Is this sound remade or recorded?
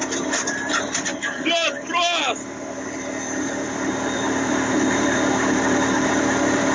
remade